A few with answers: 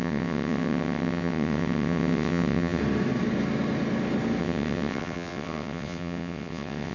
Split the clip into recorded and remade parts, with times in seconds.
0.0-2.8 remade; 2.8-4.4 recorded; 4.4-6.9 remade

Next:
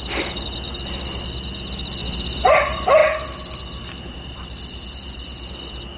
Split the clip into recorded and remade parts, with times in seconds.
0.0-6.0 recorded